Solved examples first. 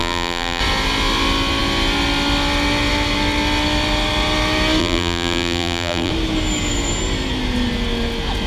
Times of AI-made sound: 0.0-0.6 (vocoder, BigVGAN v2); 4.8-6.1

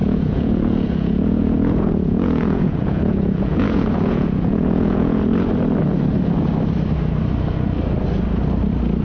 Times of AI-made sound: 0.0-5.2 (vocoder, Vocos)

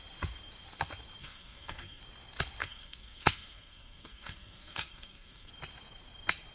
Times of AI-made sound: 1.2-2.0 (codec, SNAC); 2.6-5.5

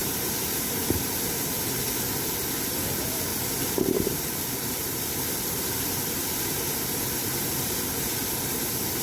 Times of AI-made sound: 0.0-1.6 (vocoder, BigVGAN v2); 3.3-5.0; 7.2-8.2

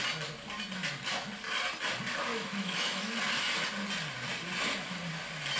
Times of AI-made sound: 2.3-3.2 (autoencoder, DAC-VAE)

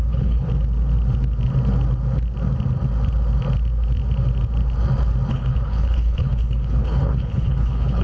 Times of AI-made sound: 0.0-0.5 (codec, HILCodec); 5.3-8.0

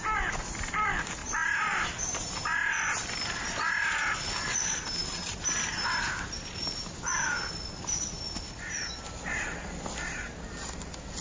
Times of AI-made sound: none

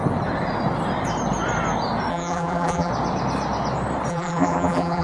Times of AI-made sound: 2.1-2.9 (vocoder, BigVGAN v2); 4.1-5.0